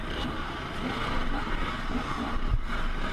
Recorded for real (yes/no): no